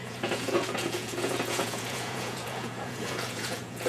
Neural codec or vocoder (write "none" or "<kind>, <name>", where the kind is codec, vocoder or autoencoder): vocoder, Vocos